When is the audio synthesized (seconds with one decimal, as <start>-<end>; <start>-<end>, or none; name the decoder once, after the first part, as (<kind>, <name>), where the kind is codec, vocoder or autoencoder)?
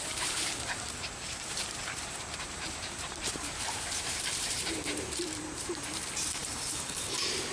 0.0-7.5 (vocoder, BigVGAN v2)